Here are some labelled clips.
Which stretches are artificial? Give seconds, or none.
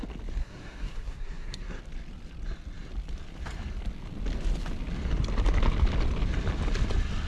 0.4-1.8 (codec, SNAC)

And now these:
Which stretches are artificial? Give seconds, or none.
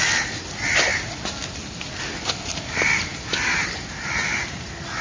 none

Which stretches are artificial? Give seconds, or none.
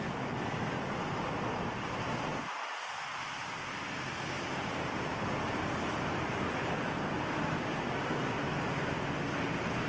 none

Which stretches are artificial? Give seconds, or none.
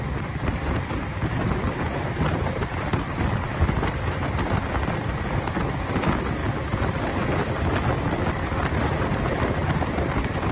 none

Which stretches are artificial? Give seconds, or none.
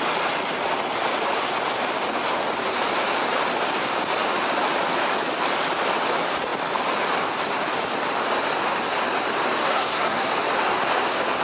9.6-10.3 (codec, SNAC)